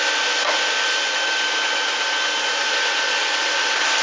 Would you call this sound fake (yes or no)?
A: no